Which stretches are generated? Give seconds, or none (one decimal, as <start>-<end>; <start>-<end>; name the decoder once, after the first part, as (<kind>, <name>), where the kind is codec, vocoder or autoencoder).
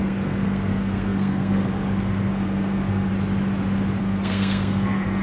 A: 0.0-3.1 (codec, SNAC); 4.0-5.2